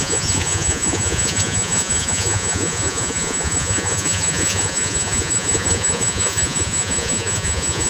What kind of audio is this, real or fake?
fake